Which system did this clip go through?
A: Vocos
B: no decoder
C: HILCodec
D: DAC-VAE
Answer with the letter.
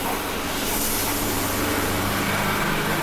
B